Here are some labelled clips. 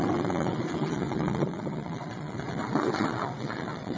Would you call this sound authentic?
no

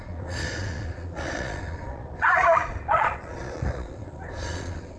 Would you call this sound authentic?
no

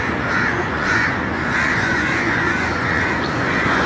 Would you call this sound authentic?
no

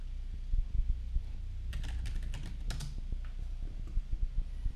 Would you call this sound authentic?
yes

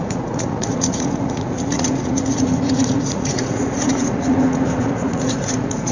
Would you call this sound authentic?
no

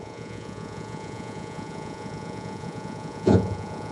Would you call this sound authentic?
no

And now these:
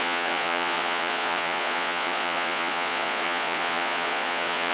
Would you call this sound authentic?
no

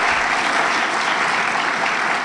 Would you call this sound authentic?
yes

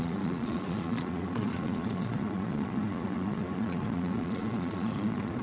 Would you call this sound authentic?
no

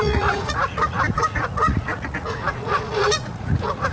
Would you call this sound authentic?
no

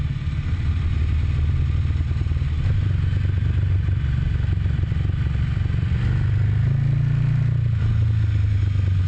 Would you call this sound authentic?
yes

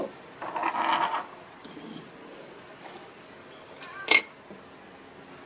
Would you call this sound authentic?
yes